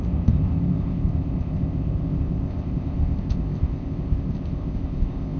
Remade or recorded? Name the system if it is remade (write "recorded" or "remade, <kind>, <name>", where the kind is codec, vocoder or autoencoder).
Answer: remade, codec, ZipCodec